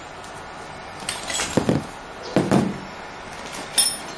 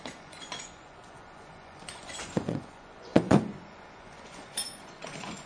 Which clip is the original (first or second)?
first